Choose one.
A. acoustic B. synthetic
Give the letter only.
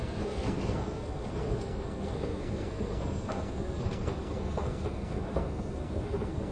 B